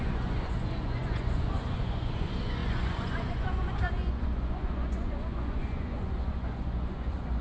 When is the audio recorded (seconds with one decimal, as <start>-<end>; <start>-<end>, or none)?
none